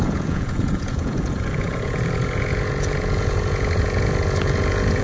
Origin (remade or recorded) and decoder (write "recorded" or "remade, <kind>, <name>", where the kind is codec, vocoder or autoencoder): remade, vocoder, Vocos